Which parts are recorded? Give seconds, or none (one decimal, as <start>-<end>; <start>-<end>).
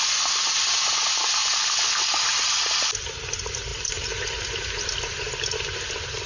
0.0-6.3